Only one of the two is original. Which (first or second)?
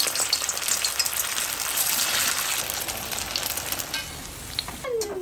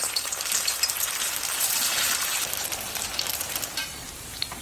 first